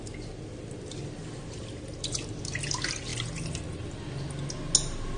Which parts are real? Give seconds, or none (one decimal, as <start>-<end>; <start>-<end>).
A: 0.0-5.2